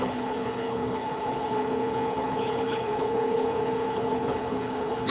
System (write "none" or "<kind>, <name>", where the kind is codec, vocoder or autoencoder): codec, HILCodec